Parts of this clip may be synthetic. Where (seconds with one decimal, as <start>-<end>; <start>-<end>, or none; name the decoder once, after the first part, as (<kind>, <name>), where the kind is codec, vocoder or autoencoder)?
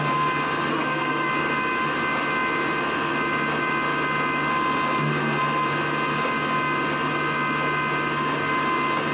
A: 0.7-1.3 (codec, SNAC)